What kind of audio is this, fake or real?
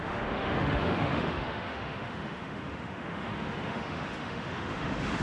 fake